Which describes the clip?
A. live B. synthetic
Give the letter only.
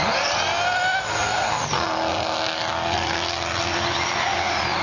A